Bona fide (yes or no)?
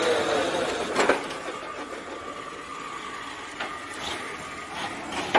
yes